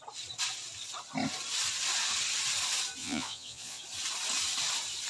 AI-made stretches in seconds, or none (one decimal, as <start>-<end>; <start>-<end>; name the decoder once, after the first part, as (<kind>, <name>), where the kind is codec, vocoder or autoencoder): 3.0-3.8 (vocoder, Vocos)